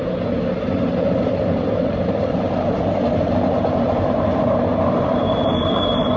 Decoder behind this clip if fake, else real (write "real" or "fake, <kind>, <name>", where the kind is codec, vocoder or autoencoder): fake, vocoder, BigVGAN v2